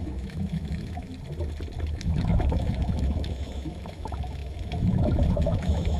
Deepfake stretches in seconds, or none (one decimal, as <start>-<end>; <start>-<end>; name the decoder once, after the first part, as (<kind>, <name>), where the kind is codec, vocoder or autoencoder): 0.0-1.1 (autoencoder, DAC-VAE); 1.9-6.0